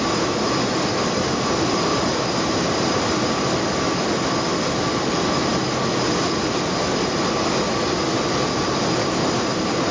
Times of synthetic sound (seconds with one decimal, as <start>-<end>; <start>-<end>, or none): none